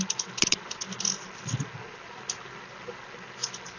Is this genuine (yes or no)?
yes